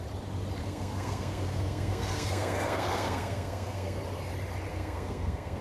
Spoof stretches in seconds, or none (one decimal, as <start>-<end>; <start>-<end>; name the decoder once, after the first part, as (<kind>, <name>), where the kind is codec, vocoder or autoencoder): 0.6-4.0 (codec, SNAC); 4.7-5.6